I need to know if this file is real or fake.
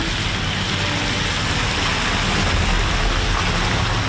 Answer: real